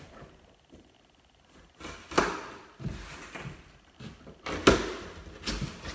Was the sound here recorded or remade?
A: recorded